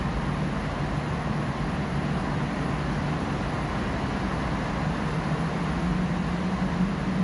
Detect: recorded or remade recorded